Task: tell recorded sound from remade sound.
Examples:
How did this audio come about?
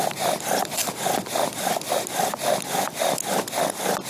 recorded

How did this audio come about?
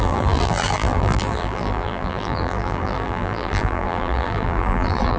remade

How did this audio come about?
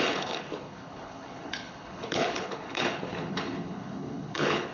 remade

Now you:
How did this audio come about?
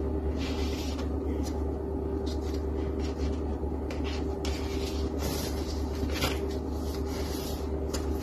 recorded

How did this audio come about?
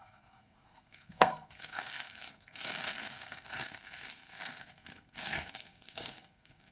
remade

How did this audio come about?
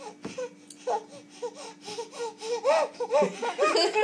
recorded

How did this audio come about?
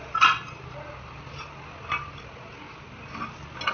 recorded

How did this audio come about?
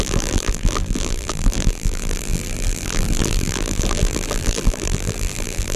remade